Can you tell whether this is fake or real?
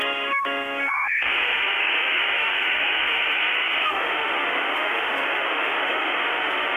fake